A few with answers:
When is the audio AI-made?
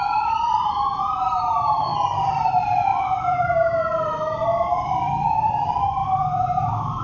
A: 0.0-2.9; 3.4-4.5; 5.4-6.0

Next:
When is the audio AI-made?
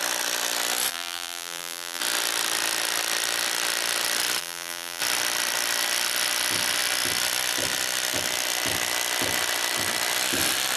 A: 0.9-2.0; 4.4-5.0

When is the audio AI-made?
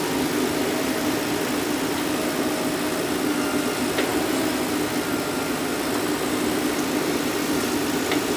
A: none